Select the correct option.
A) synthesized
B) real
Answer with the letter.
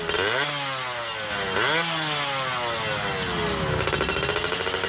B